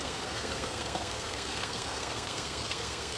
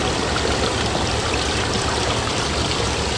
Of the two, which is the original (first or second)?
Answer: second